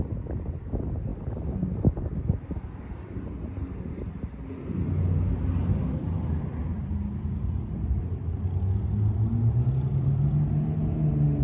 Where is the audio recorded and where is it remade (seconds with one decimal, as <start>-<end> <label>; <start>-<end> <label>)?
0.0-11.4 recorded